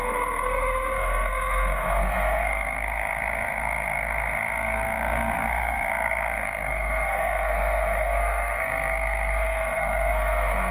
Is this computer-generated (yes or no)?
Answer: yes